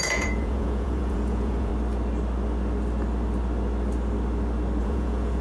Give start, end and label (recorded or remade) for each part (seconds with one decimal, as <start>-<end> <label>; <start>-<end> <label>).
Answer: 0.0-1.7 remade; 1.7-4.8 recorded; 4.8-5.4 remade